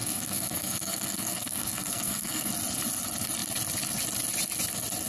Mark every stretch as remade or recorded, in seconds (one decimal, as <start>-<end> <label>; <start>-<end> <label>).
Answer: 0.0-2.5 remade; 2.5-5.1 recorded